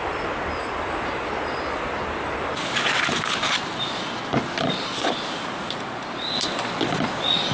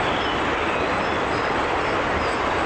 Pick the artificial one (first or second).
second